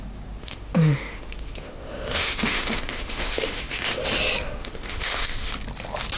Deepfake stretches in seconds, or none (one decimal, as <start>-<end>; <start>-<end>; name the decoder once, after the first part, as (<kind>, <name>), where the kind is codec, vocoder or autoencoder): 0.4-4.0 (autoencoder, DAC-VAE); 4.6-5.5